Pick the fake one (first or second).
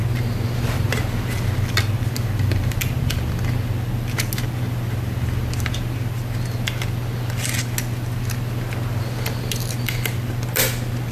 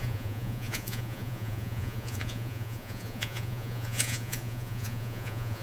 second